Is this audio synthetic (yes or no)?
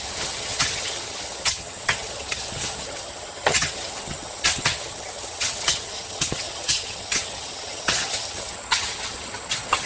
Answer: yes